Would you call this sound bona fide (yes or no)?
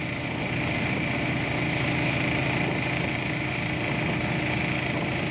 yes